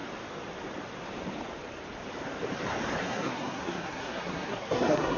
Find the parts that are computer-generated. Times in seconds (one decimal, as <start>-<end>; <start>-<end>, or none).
3.0-5.2